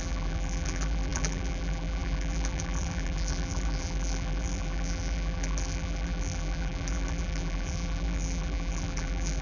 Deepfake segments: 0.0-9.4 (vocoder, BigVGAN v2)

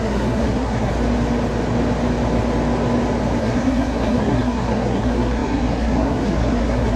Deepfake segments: 0.0-0.9 (codec, SNAC); 3.4-7.0

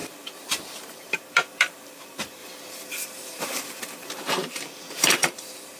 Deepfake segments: 0.0-5.8 (vocoder, BigVGAN v2)

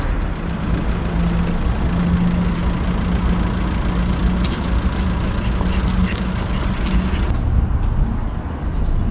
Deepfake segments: none

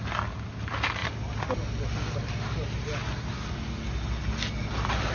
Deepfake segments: none

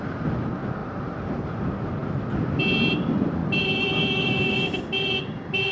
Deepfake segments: 0.8-1.6 (vocoder, BigVGAN v2); 3.4-4.8

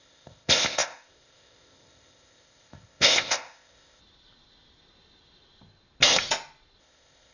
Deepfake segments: 0.0-4.0 (codec, ZipCodec); 6.8-7.3